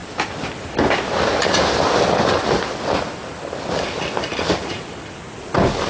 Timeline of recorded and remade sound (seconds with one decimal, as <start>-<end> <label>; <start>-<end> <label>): 0.0-5.9 recorded

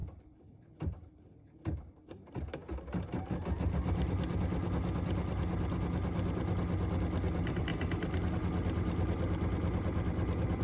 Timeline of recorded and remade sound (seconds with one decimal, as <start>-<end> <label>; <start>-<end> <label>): 0.0-2.3 remade; 2.3-10.6 recorded